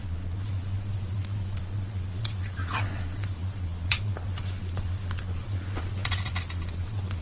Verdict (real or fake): fake